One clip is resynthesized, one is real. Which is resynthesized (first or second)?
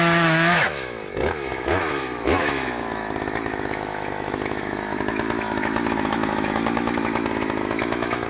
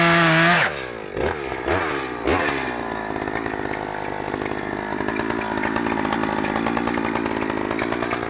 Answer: first